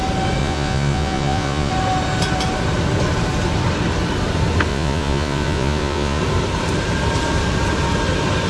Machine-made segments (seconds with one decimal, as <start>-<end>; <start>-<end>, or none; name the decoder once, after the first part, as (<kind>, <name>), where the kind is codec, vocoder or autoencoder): 0.4-1.7 (vocoder, Vocos); 4.7-6.2